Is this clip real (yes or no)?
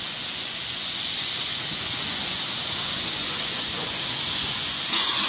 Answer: no